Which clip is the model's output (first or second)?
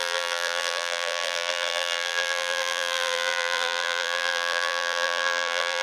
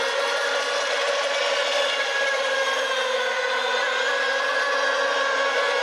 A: first